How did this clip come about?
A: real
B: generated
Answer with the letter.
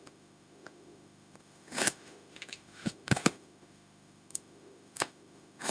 B